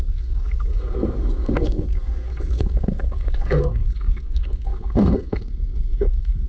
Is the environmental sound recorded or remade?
remade